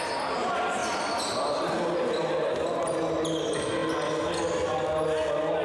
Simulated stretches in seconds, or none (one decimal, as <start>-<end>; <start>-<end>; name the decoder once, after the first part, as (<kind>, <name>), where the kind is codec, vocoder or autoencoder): none